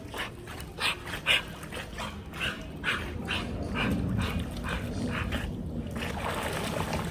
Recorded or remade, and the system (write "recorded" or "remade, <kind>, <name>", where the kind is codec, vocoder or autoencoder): recorded